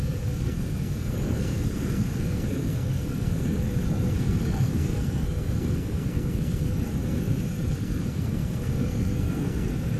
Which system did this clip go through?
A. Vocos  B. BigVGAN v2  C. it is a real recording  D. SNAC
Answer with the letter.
D